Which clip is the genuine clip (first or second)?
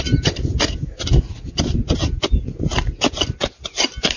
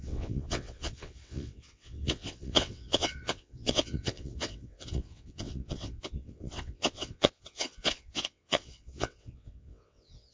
first